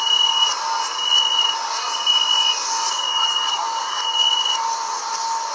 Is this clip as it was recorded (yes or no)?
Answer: yes